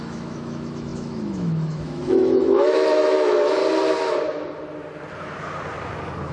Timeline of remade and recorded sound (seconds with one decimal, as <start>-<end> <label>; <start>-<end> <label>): 0.0-3.6 remade; 3.6-6.3 recorded